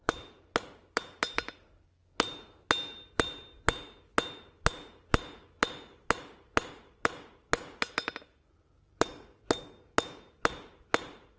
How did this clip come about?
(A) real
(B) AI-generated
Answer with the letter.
A